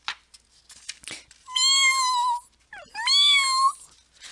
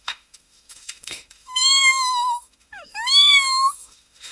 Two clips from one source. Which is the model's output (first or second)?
second